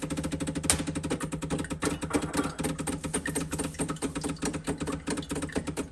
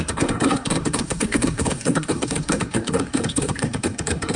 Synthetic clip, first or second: second